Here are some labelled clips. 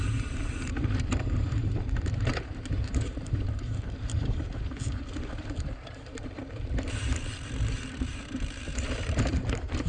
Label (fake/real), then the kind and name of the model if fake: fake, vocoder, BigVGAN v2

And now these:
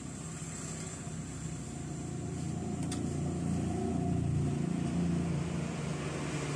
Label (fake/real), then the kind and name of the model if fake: real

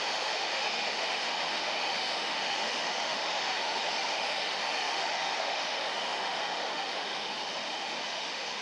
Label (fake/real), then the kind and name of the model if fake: fake, autoencoder, DAC-VAE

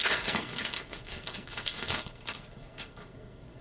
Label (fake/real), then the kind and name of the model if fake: fake, codec, SNAC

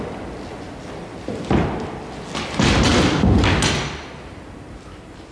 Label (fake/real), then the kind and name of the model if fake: real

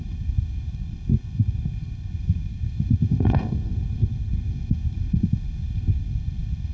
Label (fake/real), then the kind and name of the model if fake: fake, codec, SNAC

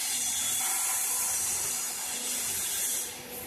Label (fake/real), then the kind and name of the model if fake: real